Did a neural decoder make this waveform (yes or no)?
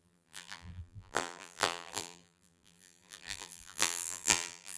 yes